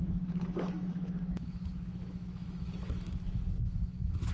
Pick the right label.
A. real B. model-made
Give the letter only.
B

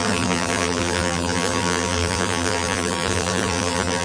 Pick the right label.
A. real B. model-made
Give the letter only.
B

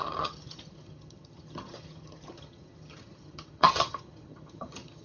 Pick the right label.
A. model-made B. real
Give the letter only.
A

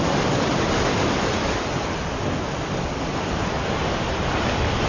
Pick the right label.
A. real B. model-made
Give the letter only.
A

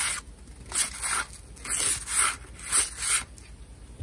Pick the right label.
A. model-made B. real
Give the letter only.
B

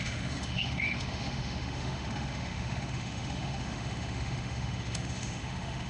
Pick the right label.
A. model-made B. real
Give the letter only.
A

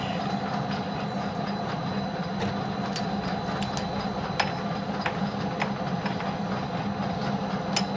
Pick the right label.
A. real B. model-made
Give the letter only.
A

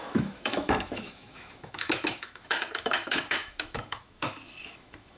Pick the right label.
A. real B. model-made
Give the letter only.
B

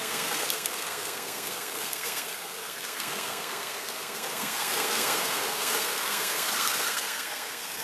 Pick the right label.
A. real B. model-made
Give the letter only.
B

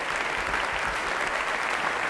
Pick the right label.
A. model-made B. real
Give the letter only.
B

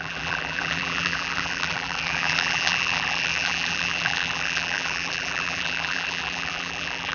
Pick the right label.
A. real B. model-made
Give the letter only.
B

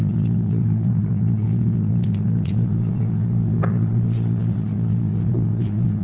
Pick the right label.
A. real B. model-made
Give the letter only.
B